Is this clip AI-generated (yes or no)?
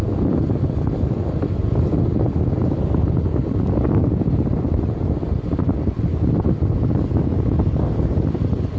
no